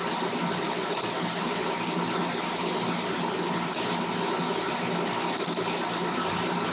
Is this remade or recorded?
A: recorded